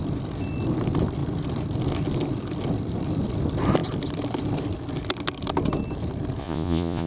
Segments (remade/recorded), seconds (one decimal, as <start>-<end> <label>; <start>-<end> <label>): 0.0-6.4 recorded; 6.4-7.1 remade